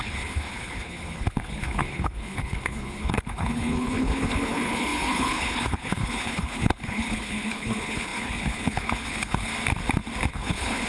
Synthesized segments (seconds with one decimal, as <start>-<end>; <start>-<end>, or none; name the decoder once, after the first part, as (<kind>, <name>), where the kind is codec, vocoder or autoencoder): 0.0-9.5 (codec, HILCodec); 10.3-10.9